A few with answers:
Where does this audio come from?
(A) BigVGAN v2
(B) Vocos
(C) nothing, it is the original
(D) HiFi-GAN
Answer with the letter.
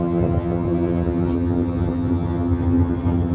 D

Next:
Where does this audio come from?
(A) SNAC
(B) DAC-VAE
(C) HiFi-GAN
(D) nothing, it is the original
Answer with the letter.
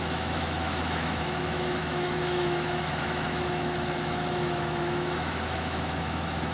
B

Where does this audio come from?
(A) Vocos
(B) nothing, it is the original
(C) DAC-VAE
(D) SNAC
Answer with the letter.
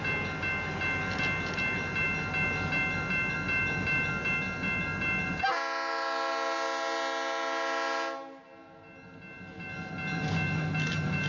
B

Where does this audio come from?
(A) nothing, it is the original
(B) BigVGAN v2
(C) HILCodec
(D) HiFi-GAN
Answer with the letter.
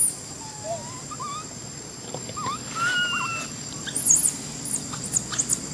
A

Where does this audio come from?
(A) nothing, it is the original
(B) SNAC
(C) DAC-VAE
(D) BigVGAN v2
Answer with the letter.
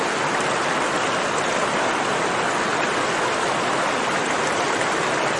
A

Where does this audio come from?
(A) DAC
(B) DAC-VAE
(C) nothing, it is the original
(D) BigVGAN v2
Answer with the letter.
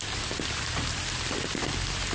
C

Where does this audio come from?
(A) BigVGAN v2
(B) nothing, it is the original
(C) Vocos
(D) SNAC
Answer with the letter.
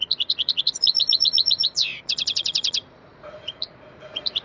C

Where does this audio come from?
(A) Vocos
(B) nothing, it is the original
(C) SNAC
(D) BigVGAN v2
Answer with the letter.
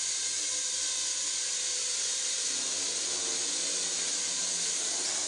B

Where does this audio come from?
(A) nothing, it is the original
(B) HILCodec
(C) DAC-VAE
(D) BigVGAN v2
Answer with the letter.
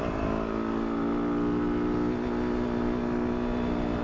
A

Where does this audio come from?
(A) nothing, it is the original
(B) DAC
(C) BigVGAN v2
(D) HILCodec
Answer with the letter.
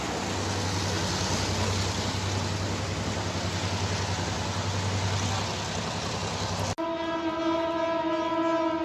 A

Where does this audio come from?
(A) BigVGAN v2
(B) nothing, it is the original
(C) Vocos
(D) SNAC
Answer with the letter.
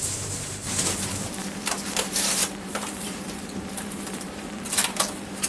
A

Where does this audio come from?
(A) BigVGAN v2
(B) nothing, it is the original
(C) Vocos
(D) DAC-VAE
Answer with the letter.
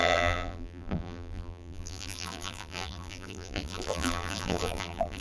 A